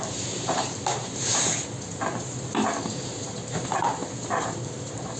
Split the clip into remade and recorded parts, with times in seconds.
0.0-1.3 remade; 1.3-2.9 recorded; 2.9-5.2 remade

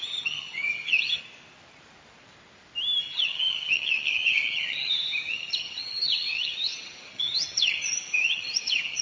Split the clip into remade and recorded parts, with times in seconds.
0.0-1.2 remade; 1.2-3.0 recorded; 3.0-9.0 remade